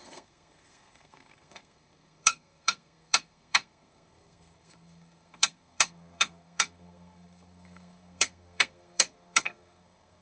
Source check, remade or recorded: remade